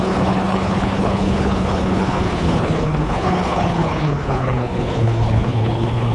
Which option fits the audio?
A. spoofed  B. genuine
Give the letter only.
A